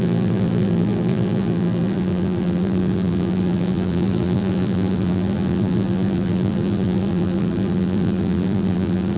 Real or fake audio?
fake